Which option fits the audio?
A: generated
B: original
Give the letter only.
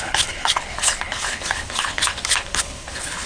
A